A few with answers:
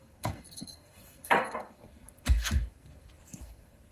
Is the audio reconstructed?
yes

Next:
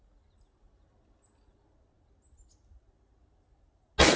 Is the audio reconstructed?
no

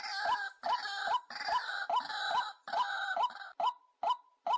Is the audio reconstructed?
no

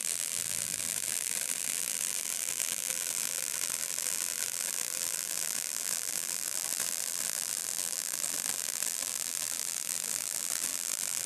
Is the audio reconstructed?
yes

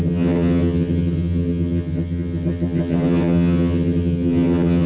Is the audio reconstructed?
yes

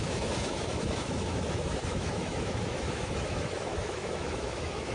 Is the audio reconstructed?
yes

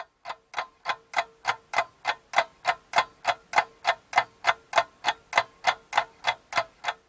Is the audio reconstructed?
no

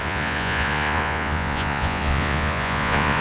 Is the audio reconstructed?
yes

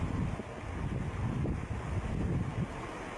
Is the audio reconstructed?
no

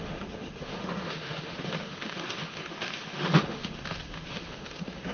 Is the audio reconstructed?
yes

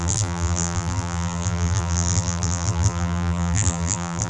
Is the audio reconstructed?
yes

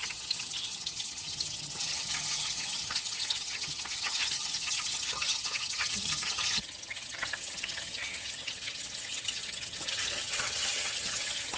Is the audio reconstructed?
yes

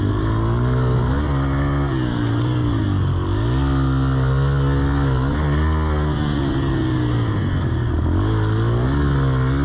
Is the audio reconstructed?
no